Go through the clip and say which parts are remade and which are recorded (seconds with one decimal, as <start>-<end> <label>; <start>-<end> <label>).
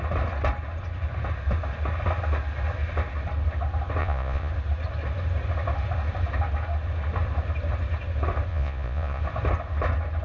0.0-4.0 recorded; 4.0-4.5 remade; 4.5-8.5 recorded; 8.5-9.2 remade; 9.2-10.2 recorded